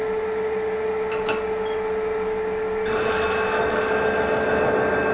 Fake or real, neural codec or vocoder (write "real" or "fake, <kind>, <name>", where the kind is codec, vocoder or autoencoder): real